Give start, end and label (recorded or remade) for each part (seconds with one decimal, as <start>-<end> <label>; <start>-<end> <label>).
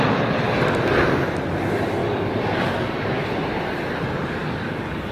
0.0-2.0 recorded; 2.0-2.7 remade; 2.7-4.4 recorded; 4.4-5.1 remade